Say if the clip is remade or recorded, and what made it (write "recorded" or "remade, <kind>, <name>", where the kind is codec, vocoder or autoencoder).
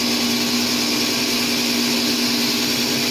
recorded